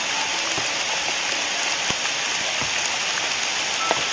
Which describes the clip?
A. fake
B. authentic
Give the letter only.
B